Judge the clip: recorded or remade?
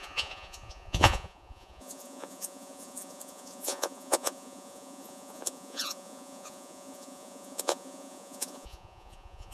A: remade